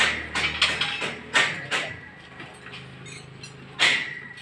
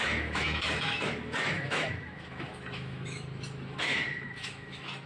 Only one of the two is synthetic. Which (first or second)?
second